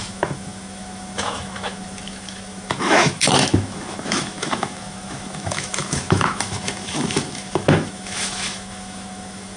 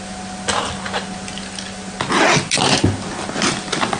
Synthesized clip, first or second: first